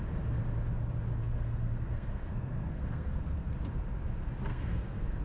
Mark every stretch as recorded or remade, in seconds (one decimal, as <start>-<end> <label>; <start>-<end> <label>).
0.0-1.2 recorded; 1.2-3.5 remade; 3.5-4.5 recorded; 4.5-5.2 remade